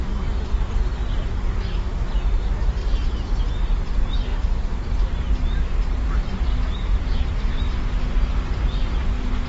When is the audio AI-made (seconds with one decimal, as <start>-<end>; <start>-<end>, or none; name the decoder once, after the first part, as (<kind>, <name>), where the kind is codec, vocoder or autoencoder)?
2.8-3.5 (vocoder, BigVGAN v2); 4.3-7.6